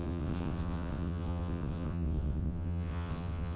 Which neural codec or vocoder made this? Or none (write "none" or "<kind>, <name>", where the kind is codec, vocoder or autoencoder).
vocoder, WaveNeXt